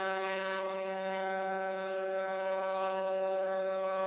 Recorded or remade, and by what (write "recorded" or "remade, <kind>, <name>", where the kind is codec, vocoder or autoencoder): remade, codec, HILCodec